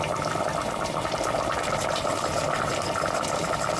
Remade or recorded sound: remade